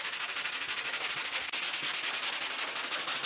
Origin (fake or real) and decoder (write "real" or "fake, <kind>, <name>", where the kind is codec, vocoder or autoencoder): real